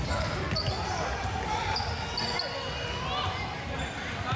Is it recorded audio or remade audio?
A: recorded